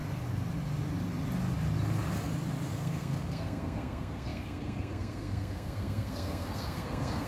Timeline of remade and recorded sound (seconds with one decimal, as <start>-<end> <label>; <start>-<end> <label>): 0.0-2.7 recorded; 2.7-7.3 remade